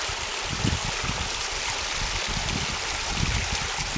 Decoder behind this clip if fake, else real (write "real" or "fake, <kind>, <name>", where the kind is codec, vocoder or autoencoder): real